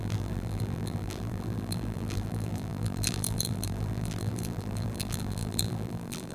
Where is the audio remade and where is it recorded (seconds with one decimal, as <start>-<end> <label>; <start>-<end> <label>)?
0.0-6.3 remade